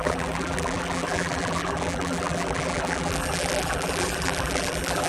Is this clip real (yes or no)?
no